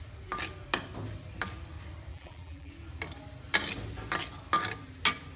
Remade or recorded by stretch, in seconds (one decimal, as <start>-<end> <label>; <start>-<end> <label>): 0.0-2.1 recorded; 2.1-2.7 remade; 2.7-5.4 recorded